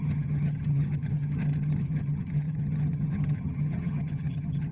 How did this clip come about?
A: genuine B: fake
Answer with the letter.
B